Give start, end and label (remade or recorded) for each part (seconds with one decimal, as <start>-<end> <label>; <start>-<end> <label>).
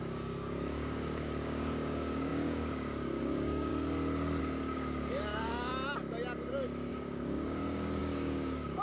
0.0-3.7 remade; 3.7-4.4 recorded; 4.4-5.7 remade; 5.7-6.9 recorded; 6.9-8.8 remade